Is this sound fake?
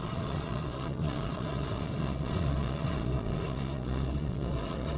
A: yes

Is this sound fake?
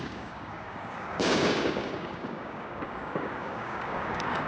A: yes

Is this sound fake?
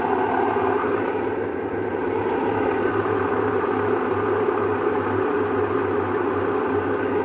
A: no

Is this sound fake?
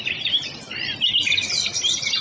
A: no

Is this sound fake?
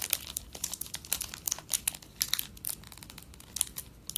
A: no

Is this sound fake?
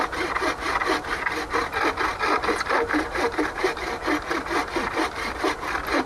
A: no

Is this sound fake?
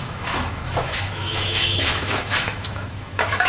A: yes